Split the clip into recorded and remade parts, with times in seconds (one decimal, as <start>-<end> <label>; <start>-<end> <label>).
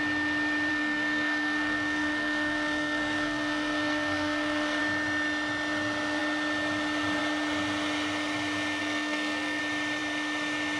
0.0-0.7 recorded; 0.7-4.8 remade; 4.8-8.8 recorded; 8.8-9.6 remade; 9.6-10.8 recorded